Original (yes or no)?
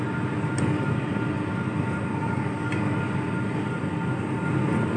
yes